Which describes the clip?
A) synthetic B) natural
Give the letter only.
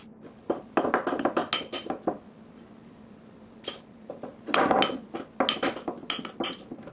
B